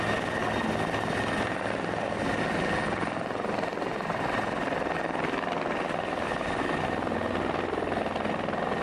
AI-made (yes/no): no